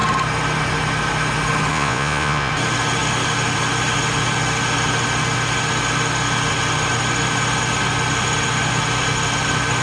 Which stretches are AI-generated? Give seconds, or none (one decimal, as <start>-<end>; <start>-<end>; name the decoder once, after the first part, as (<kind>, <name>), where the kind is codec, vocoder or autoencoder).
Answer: 1.7-2.5 (vocoder, Vocos)